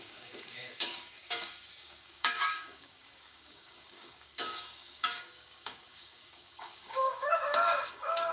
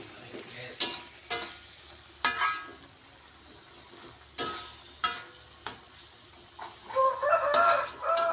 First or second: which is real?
second